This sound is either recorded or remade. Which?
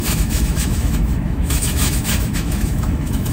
remade